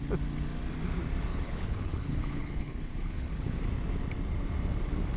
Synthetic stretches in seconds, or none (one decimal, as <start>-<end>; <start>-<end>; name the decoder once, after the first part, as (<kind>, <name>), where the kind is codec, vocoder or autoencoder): 1.3-3.6 (codec, HILCodec)